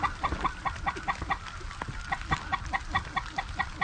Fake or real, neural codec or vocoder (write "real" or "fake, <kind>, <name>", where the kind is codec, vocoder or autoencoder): real